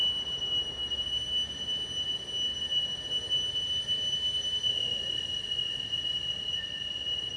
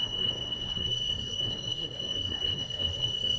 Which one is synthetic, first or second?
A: second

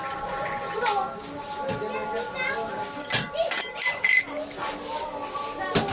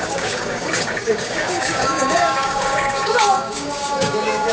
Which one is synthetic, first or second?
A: second